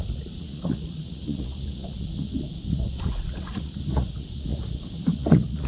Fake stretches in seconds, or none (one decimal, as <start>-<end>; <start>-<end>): 0.0-5.7